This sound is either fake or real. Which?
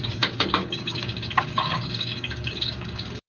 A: fake